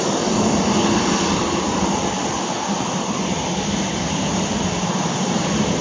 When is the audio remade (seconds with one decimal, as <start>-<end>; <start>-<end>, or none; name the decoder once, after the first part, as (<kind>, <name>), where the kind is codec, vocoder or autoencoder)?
none